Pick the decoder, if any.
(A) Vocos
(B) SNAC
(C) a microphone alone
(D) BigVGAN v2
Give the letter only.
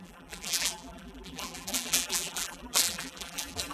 D